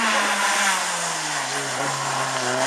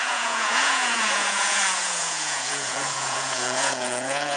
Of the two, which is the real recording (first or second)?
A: first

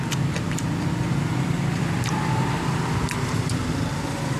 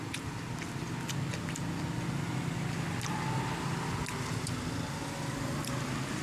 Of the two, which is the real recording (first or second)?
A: second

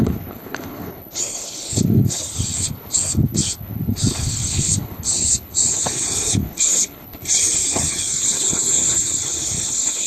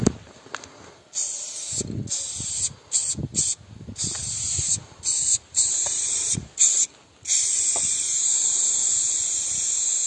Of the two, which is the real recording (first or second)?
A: second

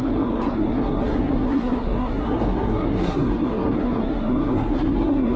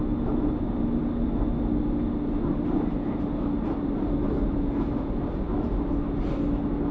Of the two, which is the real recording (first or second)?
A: second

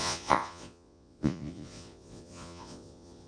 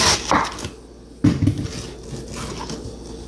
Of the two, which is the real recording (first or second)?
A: second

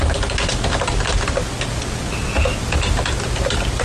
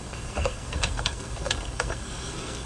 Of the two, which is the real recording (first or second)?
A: first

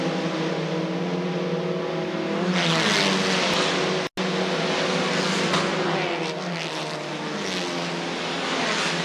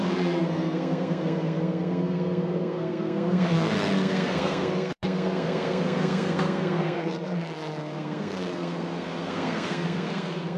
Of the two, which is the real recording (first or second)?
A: first